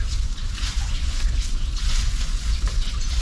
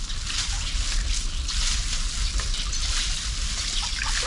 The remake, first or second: first